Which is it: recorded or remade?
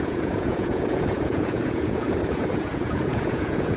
remade